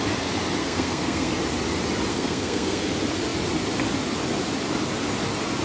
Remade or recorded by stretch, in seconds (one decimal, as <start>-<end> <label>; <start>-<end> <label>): 0.0-0.6 recorded; 0.6-1.3 remade; 1.3-2.1 recorded; 2.1-2.9 remade; 2.9-5.6 recorded